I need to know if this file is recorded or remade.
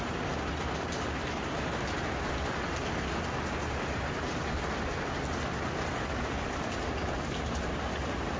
recorded